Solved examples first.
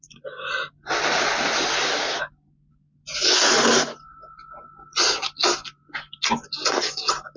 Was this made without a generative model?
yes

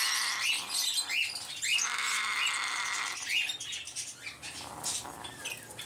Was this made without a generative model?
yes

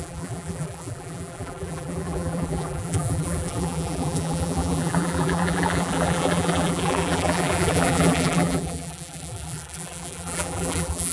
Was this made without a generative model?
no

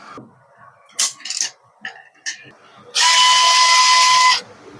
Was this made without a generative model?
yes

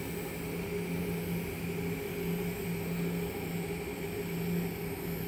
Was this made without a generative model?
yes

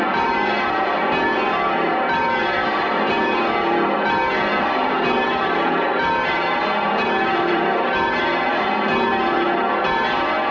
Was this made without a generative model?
no